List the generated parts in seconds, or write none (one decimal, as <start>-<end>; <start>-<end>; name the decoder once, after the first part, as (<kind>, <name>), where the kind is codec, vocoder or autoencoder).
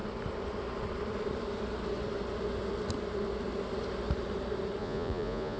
4.8-5.6 (vocoder, Vocos)